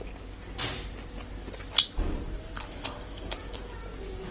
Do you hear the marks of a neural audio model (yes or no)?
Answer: no